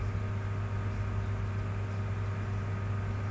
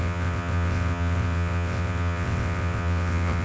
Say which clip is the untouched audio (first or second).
first